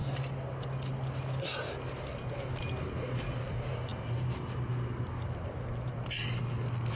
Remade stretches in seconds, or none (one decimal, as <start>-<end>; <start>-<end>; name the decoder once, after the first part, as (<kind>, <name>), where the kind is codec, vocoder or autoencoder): none